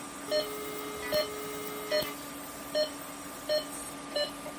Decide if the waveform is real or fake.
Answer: real